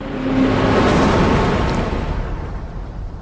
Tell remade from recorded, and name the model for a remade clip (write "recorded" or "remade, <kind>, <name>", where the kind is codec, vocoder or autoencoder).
recorded